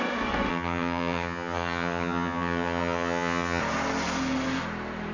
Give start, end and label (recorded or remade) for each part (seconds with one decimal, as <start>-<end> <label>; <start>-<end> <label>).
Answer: 0.0-0.5 recorded; 0.5-3.6 remade; 3.6-5.1 recorded